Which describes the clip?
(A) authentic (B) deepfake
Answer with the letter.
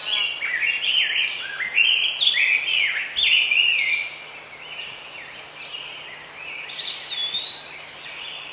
A